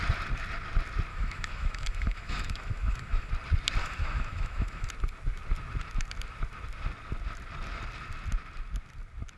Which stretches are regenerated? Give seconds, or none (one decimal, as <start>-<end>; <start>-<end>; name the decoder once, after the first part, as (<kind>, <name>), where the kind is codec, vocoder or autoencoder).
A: 1.1-3.3 (autoencoder, DAC-VAE); 3.8-4.9

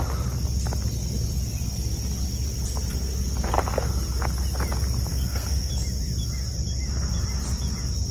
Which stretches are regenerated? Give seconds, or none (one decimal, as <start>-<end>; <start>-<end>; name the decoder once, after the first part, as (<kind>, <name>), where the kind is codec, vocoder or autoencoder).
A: 5.1-5.7 (codec, SNAC)